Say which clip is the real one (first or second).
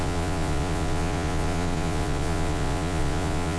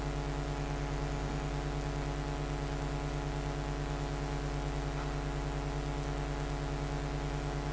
second